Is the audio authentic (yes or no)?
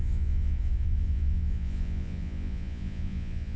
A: no